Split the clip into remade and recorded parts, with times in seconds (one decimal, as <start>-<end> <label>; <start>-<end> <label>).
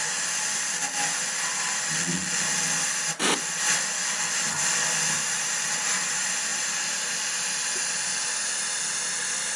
0.0-9.6 recorded